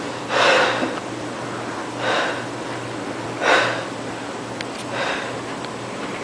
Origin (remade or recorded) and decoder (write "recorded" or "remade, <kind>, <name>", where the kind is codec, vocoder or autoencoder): recorded